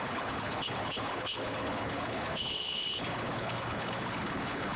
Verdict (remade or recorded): remade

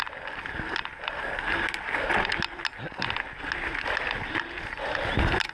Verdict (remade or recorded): recorded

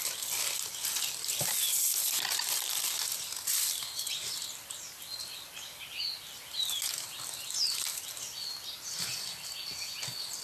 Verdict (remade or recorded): recorded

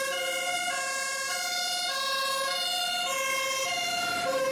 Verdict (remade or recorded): remade